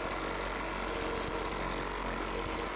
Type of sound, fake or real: real